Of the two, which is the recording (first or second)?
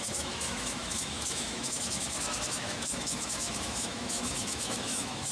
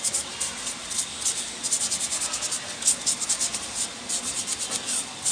second